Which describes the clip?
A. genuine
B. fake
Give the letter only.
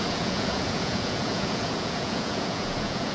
B